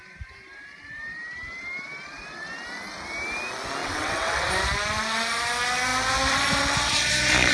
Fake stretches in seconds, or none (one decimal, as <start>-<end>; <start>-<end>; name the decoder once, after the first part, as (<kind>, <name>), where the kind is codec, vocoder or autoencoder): 3.8-4.5 (vocoder, WaveNeXt)